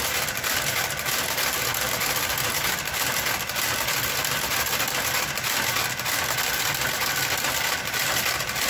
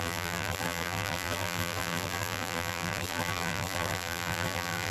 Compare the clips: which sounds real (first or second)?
first